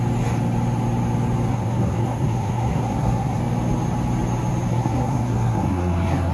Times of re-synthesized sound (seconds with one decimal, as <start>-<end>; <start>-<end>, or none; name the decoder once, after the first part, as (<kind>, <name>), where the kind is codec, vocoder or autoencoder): 1.5-3.4 (codec, SNAC); 4.7-6.3